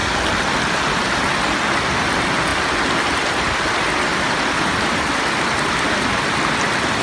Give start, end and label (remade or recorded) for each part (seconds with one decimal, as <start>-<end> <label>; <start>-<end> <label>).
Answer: 0.0-7.0 recorded